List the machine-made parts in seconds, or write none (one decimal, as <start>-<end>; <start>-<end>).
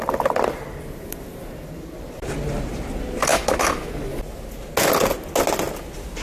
3.3-3.9